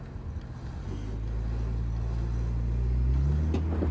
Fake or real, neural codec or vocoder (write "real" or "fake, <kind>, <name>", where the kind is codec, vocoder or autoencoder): real